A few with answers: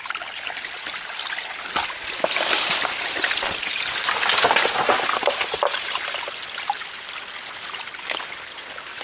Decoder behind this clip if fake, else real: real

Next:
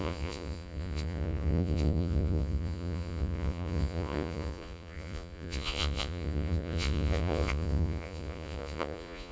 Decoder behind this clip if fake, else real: fake, vocoder, Vocos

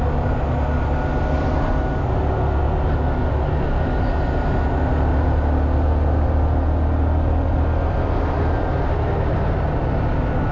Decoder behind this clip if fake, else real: real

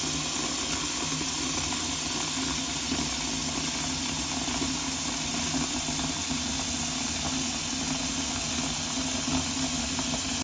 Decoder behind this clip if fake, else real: real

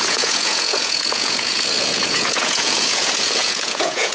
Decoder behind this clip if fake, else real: fake, vocoder, Vocos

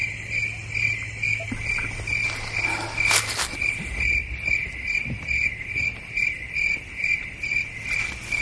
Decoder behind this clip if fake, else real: real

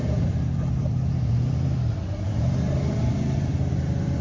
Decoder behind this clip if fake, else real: fake, vocoder, BigVGAN v2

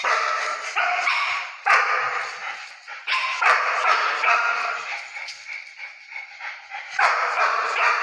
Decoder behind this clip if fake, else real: fake, vocoder, BigVGAN v2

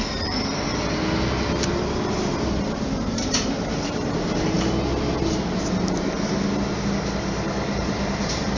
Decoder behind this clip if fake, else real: real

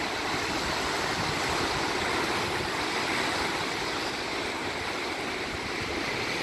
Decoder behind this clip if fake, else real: real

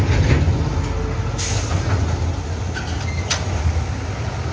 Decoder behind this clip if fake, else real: real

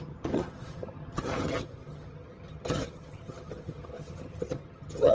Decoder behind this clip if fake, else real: fake, vocoder, HiFi-GAN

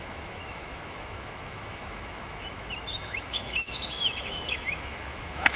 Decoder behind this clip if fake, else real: fake, autoencoder, DAC-VAE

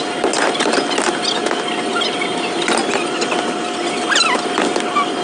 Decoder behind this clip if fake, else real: real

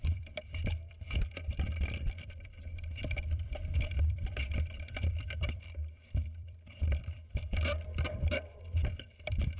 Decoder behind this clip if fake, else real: fake, vocoder, BigVGAN v2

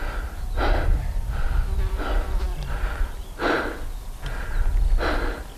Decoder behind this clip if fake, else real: real